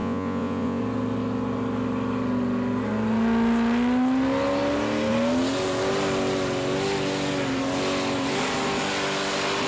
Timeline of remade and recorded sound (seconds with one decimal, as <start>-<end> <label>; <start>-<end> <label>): 0.0-0.8 remade; 0.8-9.7 recorded